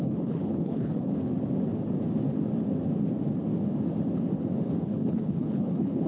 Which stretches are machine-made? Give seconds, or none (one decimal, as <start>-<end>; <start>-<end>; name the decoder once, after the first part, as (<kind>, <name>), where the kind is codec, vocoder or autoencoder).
0.0-1.1 (codec, HILCodec); 4.8-6.1